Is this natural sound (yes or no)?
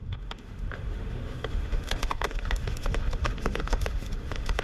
no